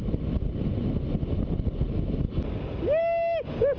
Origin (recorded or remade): recorded